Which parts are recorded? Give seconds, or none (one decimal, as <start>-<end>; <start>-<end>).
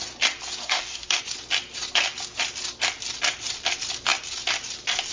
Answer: 0.0-0.6; 1.2-5.1